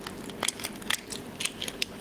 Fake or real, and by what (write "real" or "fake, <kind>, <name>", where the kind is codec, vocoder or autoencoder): real